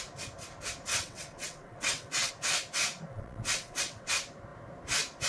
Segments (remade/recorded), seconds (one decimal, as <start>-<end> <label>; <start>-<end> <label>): 0.0-0.9 recorded; 0.9-2.3 remade; 2.3-3.1 recorded; 3.1-4.1 remade; 4.1-5.3 recorded